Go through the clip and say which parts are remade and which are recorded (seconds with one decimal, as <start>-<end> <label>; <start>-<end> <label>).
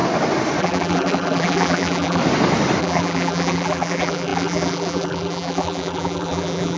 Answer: 0.0-0.6 recorded; 0.6-2.2 remade; 2.2-2.8 recorded; 2.8-6.8 remade